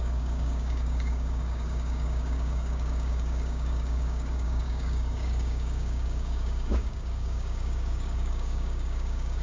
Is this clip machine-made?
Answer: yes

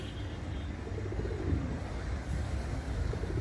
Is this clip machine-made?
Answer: yes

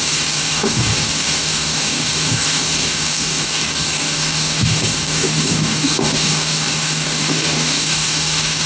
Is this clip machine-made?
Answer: yes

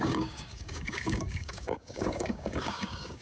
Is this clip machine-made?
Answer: yes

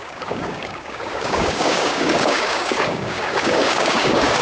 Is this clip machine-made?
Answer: yes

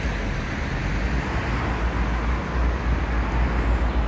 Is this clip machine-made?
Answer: no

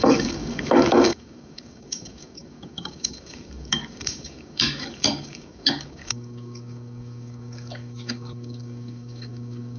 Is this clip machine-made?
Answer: yes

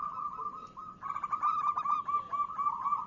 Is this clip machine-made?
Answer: no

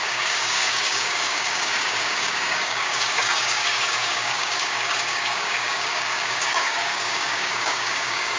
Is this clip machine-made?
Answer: yes